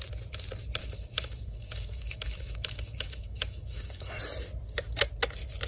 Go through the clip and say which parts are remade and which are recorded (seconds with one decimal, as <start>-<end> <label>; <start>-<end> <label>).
0.0-0.8 recorded; 0.8-4.2 remade; 4.2-5.7 recorded

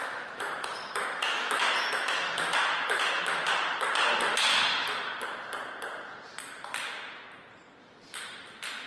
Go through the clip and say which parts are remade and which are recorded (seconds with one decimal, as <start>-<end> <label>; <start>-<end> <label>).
0.0-3.2 remade; 3.2-8.9 recorded